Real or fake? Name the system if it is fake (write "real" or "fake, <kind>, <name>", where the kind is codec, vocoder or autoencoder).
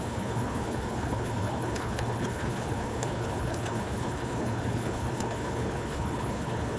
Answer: fake, codec, HILCodec